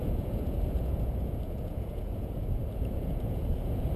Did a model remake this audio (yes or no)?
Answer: yes